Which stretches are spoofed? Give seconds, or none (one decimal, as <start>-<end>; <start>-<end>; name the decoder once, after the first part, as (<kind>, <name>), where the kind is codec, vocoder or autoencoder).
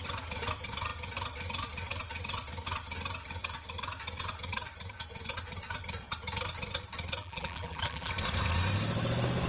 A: 7.2-8.1 (vocoder, BigVGAN v2)